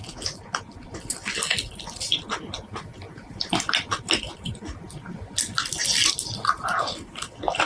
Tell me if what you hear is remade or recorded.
recorded